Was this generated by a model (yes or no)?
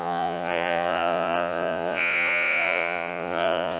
yes